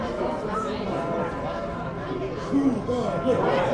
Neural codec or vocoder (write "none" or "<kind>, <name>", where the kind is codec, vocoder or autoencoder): vocoder, BigVGAN v2